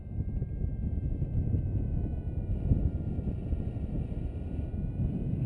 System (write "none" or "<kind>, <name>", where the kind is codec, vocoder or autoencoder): none